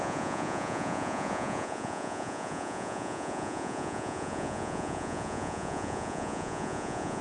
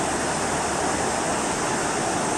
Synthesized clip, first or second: first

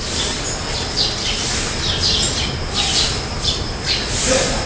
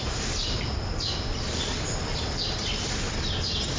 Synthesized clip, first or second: second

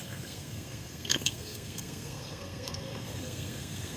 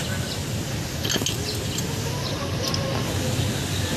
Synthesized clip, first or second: first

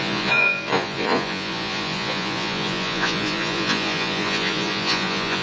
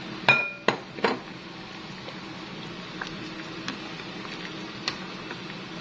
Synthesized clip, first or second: first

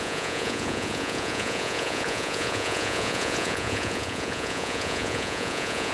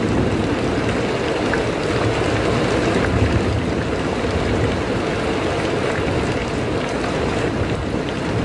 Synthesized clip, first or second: first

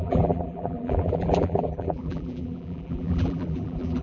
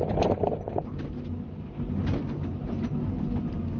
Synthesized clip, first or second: first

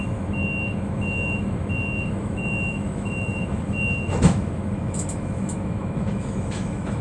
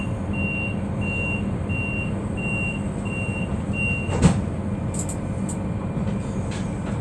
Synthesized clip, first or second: first